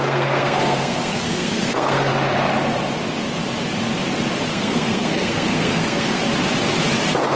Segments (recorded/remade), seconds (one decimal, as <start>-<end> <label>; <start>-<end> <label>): 0.0-2.1 remade; 2.1-4.5 recorded; 4.5-6.2 remade; 6.2-7.4 recorded